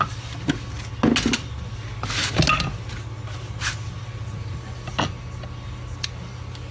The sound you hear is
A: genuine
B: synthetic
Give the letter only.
A